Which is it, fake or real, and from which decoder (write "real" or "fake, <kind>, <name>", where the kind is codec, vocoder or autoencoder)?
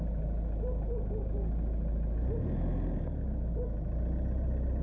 real